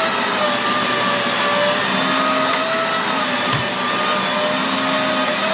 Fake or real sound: real